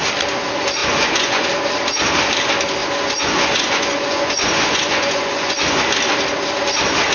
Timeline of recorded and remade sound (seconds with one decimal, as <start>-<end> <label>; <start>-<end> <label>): 0.0-0.8 recorded; 0.8-1.5 remade; 1.5-2.8 recorded; 2.8-5.8 remade; 5.8-7.1 recorded